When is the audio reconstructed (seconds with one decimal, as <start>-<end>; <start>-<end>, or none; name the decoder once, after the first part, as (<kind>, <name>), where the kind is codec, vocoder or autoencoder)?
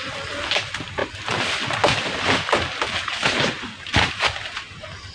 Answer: none